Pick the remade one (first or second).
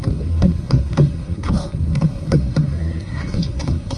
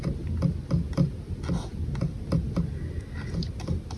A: first